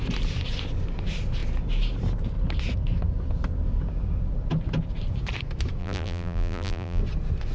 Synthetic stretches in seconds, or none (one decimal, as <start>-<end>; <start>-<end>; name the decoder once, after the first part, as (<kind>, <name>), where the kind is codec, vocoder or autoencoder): 5.8-7.0 (vocoder, BigVGAN v2)